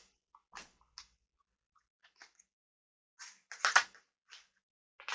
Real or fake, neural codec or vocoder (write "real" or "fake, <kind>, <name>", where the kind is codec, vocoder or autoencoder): real